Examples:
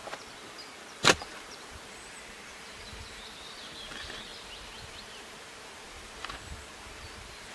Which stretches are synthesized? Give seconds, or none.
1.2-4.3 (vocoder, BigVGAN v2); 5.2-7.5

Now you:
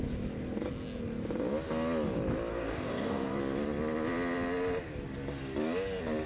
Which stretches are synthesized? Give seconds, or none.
2.5-3.4 (codec, DAC)